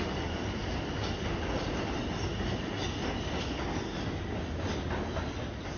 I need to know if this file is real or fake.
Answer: real